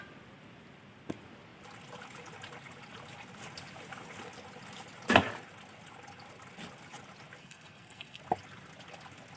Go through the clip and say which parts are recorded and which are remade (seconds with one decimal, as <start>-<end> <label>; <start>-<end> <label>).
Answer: 0.0-7.4 recorded; 7.4-8.2 remade; 8.2-9.4 recorded